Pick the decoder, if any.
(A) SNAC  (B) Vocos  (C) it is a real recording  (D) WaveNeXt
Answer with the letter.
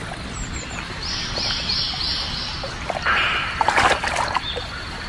C